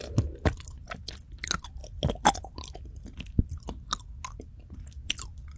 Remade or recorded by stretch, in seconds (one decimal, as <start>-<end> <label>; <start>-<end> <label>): 0.0-5.6 recorded